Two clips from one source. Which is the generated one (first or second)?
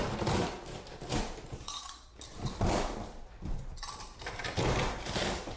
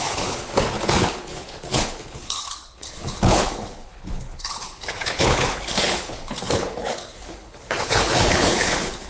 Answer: second